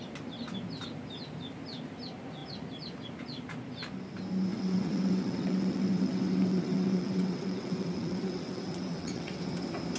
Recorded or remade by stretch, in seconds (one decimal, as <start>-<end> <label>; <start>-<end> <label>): 0.0-4.5 recorded; 4.5-9.4 remade; 9.4-10.0 recorded